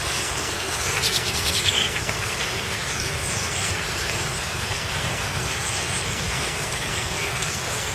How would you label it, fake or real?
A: fake